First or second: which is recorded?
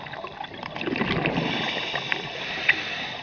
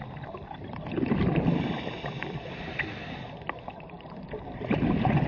first